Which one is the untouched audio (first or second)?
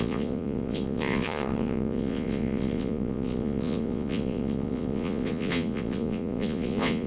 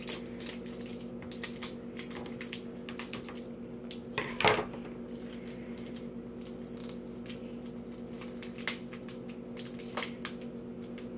second